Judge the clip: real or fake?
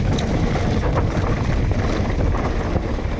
fake